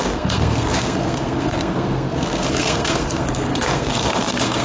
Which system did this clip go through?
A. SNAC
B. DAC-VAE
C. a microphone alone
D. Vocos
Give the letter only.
A